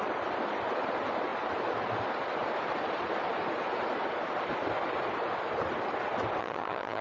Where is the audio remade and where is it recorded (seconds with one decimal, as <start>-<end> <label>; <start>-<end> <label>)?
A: 0.0-6.4 recorded; 6.4-7.0 remade